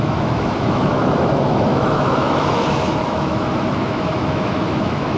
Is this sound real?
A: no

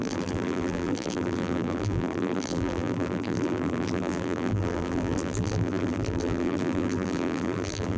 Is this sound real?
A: no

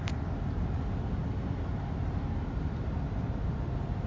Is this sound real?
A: yes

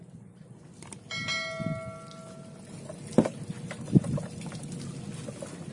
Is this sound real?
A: yes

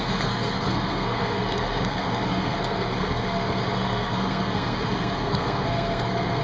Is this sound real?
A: no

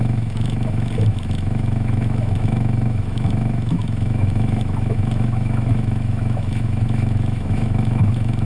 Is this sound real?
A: no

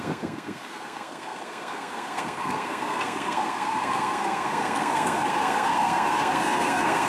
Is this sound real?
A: no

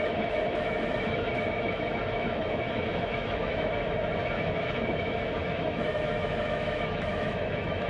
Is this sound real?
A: no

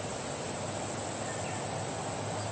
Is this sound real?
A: yes